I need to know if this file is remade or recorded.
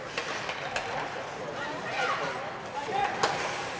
recorded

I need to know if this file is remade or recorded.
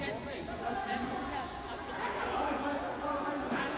remade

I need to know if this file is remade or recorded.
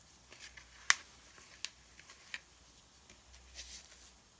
recorded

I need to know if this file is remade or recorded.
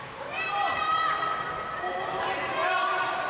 recorded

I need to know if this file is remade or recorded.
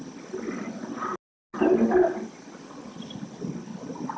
recorded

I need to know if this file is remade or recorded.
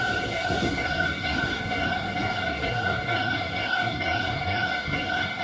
remade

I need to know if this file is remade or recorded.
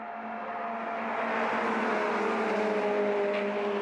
recorded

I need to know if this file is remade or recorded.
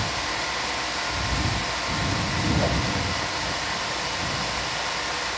recorded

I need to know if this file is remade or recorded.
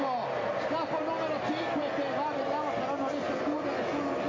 recorded